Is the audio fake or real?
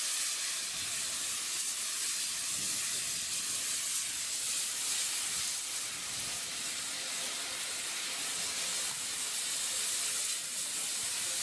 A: real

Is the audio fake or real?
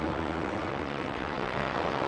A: fake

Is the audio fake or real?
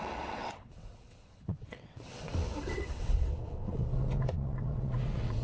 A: fake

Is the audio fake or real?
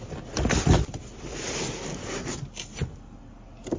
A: real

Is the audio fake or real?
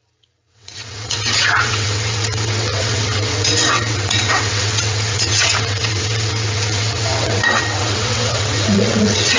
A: fake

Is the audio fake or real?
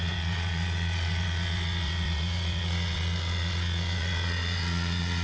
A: fake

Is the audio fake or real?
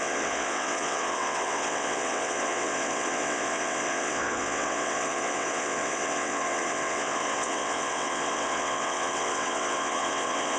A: fake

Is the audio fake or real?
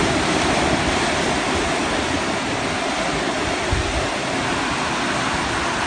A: real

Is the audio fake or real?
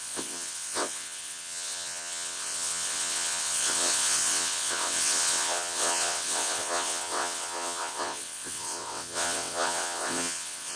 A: fake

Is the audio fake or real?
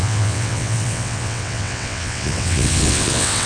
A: fake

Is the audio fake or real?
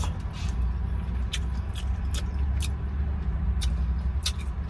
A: real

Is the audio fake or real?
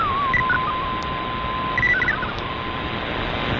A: real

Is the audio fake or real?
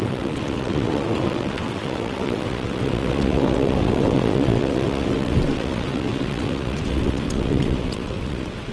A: fake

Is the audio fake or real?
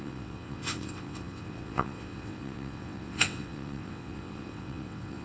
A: fake